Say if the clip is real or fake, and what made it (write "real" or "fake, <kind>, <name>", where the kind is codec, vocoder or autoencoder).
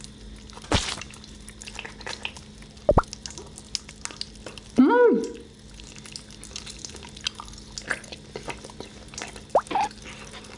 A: real